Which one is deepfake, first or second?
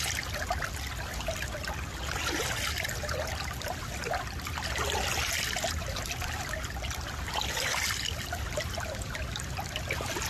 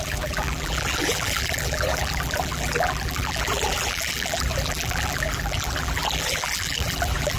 second